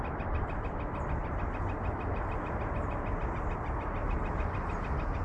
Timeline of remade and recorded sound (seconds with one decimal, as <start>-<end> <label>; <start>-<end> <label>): 0.0-5.2 recorded